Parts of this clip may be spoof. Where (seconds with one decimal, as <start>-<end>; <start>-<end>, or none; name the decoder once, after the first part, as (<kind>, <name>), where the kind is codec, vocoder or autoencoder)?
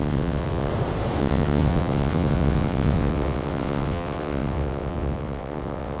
0.0-0.7 (vocoder, WaveNeXt); 1.2-6.0